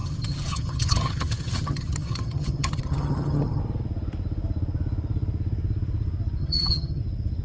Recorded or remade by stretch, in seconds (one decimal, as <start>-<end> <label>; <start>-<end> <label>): 0.0-3.6 remade; 3.6-6.4 recorded; 6.4-7.0 remade; 7.0-7.4 recorded